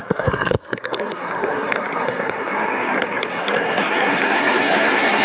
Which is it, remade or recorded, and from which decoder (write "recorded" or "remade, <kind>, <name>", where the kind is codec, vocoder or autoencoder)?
remade, codec, SNAC